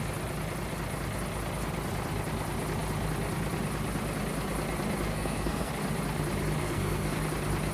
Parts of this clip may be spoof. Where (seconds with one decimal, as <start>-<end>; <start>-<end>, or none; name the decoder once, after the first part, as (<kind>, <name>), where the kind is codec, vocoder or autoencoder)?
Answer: 5.1-5.7 (codec, SNAC); 6.6-7.2